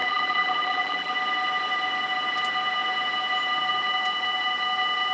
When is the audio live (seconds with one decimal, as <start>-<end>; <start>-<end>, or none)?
1.1-5.1